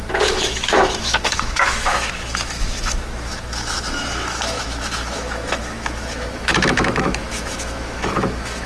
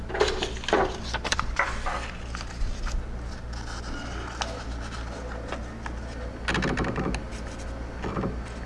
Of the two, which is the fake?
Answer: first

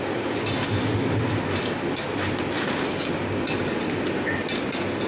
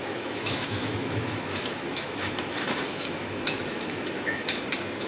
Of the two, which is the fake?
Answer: second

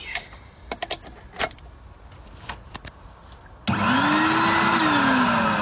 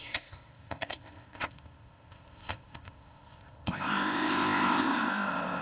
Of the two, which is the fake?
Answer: second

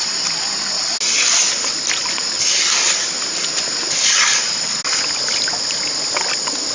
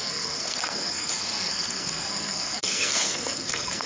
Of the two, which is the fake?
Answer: second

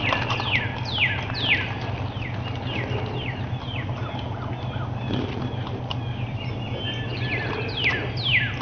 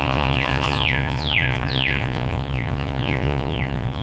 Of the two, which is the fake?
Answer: second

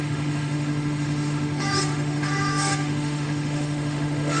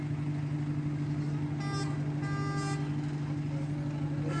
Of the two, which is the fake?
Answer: first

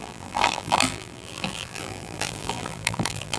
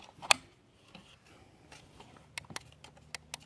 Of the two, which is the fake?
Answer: first